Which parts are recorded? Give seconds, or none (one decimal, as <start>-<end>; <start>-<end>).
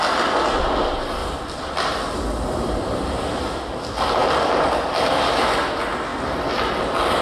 0.0-1.2; 3.8-6.1; 6.7-7.2